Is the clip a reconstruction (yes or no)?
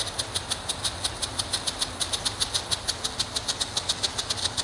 no